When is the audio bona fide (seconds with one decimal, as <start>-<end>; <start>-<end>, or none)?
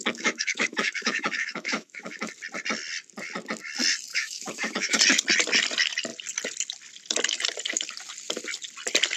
2.3-4.1; 5.0-9.2